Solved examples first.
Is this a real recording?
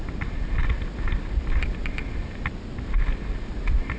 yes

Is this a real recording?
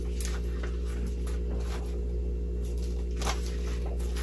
yes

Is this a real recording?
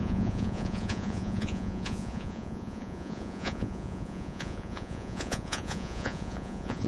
no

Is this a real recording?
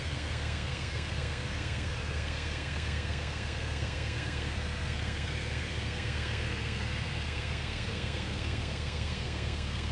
no